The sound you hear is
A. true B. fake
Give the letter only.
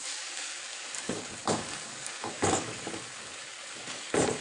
B